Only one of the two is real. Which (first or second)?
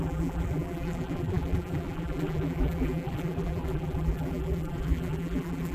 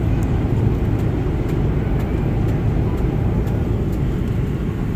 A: second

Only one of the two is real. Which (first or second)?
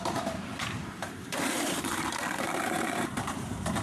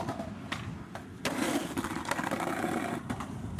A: second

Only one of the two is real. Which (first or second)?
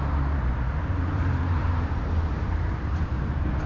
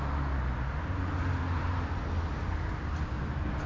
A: second